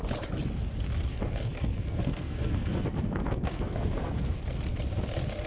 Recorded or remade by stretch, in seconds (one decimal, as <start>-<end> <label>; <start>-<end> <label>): 0.0-1.1 recorded; 1.1-4.4 remade; 4.4-5.5 recorded